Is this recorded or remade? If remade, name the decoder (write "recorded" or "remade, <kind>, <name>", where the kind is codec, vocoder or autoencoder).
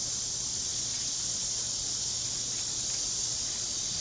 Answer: recorded